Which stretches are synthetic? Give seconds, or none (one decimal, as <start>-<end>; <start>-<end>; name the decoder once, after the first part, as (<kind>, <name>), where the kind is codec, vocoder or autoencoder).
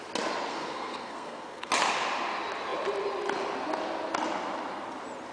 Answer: 0.5-1.7 (codec, SNAC)